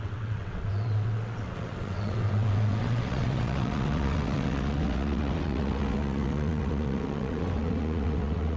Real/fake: fake